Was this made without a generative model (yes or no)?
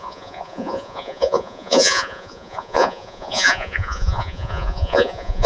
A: no